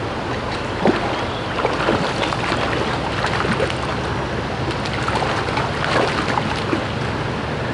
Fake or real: real